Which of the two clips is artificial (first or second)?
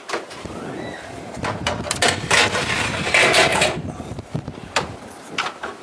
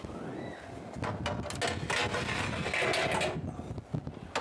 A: first